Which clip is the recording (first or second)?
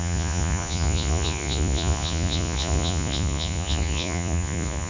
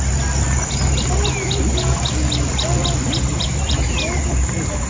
second